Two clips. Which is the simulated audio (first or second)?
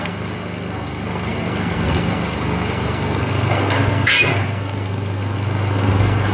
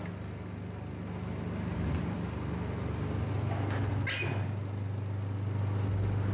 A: first